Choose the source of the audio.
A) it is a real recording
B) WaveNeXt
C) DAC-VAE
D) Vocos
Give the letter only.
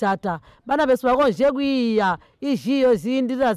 A